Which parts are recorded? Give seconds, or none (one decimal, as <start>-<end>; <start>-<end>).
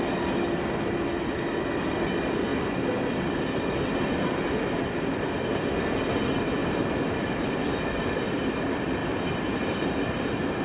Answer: 0.0-6.6; 7.6-9.0; 10.2-10.6